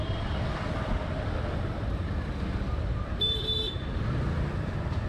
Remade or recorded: remade